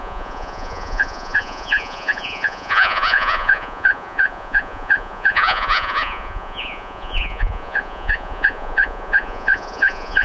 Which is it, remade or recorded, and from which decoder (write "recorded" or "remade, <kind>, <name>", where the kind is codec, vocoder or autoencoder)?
remade, vocoder, Vocos